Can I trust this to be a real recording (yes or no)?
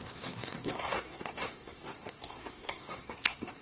no